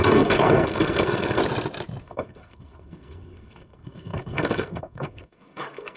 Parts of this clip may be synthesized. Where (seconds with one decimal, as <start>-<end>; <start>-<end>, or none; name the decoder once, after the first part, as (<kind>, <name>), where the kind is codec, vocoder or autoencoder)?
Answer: 0.0-1.4 (codec, SNAC); 2.0-6.0